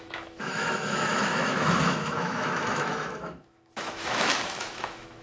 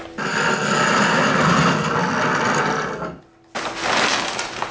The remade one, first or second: first